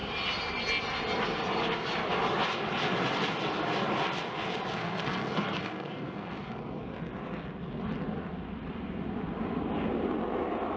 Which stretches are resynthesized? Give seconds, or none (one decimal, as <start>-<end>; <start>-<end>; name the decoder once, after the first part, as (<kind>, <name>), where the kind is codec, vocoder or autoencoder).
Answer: 4.8-6.6 (codec, SNAC)